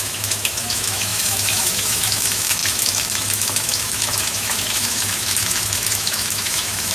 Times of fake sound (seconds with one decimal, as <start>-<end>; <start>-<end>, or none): 0.0-6.9